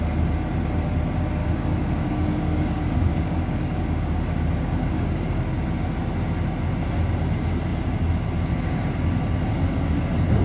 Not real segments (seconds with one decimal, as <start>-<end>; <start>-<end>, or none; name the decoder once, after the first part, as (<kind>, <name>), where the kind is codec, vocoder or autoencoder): 1.4-5.4 (codec, DAC)